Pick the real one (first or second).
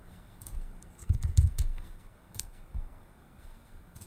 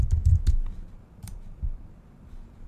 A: second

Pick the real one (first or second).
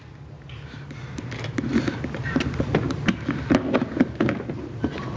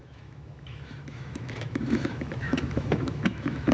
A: first